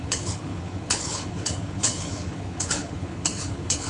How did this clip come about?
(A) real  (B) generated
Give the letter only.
B